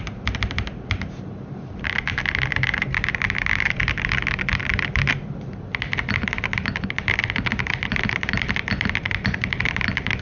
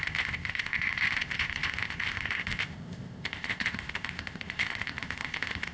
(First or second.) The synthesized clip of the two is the second